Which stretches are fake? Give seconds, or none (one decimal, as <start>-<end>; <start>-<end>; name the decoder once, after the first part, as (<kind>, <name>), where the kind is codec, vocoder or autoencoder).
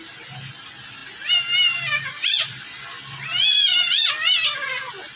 none